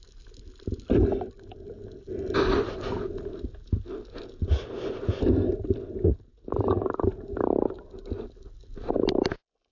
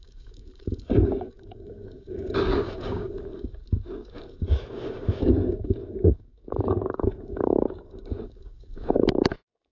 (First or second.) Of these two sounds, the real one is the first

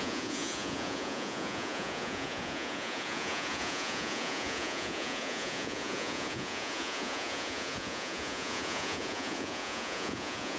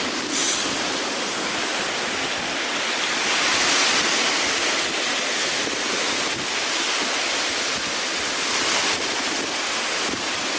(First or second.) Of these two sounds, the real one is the second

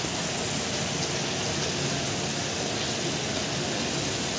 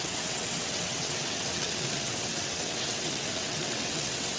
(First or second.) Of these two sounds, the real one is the first